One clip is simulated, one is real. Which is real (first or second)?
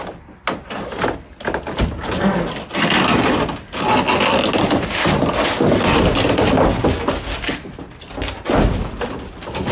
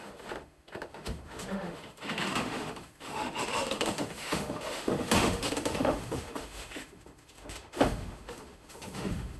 first